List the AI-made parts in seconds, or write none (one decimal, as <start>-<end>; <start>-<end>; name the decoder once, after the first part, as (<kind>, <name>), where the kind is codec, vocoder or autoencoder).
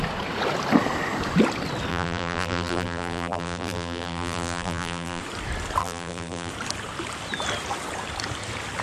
1.9-5.2 (vocoder, BigVGAN v2); 5.8-6.5